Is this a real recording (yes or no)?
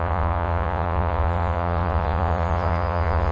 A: no